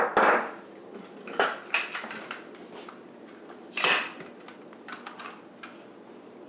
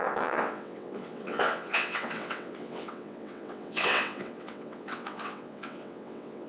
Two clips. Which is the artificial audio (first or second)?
second